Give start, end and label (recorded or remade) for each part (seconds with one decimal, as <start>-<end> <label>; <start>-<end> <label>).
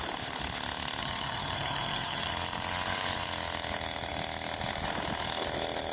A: 0.0-1.0 recorded; 1.0-2.3 remade; 2.3-5.9 recorded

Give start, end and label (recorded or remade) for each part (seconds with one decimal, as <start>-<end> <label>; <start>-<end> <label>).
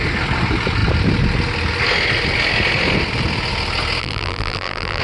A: 0.0-4.0 recorded; 4.0-5.0 remade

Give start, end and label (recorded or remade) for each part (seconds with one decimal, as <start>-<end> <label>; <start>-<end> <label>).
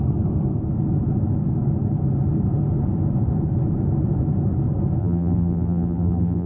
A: 0.0-5.0 recorded; 5.0-6.5 remade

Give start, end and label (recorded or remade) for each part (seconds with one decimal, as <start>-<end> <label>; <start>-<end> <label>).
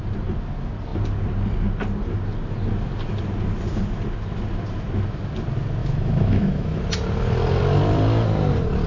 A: 0.0-5.8 recorded; 5.8-6.8 remade; 6.8-8.9 recorded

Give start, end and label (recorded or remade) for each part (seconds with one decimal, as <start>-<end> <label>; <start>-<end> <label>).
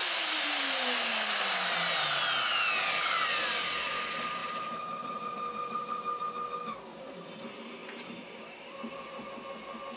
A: 0.0-1.1 remade; 1.1-4.4 recorded; 4.4-6.2 remade; 6.2-7.8 recorded; 7.8-9.2 remade; 9.2-10.0 recorded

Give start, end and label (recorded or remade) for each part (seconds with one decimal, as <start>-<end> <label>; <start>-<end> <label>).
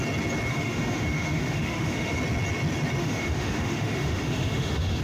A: 0.0-0.5 recorded; 0.5-2.2 remade; 2.2-3.0 recorded; 3.0-5.0 remade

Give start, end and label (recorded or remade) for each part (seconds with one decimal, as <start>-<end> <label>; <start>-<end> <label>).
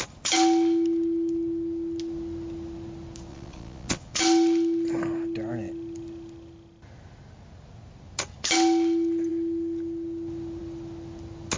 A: 0.0-3.3 recorded; 3.3-4.2 remade; 4.2-11.6 recorded